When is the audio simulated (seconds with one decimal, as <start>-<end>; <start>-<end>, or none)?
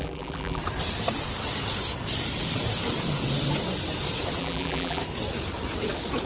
0.0-0.6; 4.4-5.0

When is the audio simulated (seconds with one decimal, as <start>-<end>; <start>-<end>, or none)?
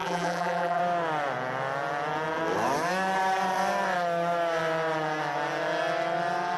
0.0-0.8